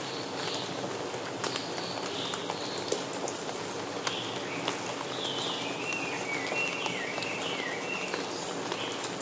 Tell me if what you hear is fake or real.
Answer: real